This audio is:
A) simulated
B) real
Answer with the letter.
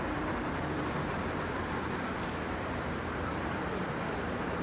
A